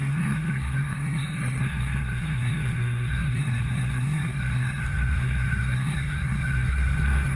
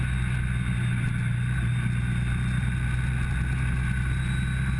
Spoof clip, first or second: first